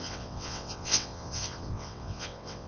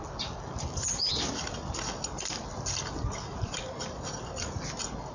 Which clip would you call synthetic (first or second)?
first